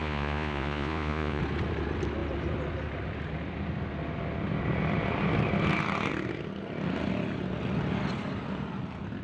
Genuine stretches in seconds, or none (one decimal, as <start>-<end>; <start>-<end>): 1.4-9.2